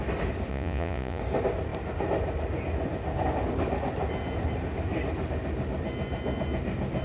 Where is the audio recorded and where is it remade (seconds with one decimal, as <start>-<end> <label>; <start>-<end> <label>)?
0.0-0.5 recorded; 0.5-1.2 remade; 1.2-7.0 recorded